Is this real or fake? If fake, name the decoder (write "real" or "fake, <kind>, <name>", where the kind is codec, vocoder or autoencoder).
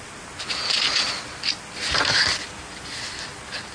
real